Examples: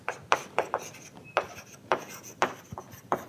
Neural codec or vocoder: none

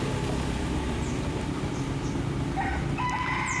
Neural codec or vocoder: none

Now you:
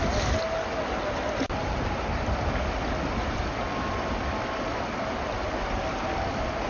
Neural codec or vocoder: none